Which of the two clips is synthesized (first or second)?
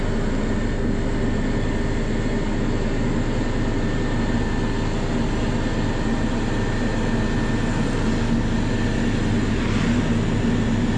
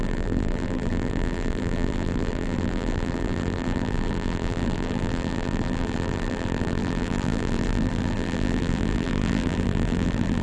second